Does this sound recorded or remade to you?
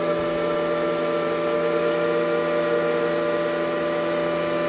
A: recorded